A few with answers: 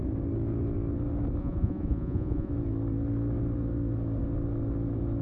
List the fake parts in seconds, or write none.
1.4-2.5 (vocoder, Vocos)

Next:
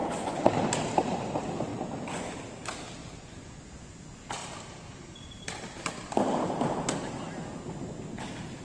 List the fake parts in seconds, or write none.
0.0-0.5 (vocoder, Vocos); 1.7-2.3; 3.0-3.6

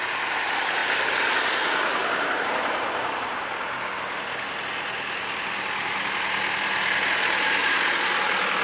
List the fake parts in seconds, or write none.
7.6-8.1 (vocoder, Vocos)

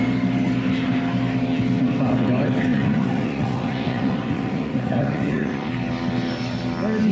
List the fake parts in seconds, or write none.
2.7-5.7 (vocoder, Vocos)

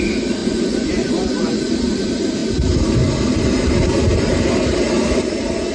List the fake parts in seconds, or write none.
0.4-1.5 (vocoder, Vocos)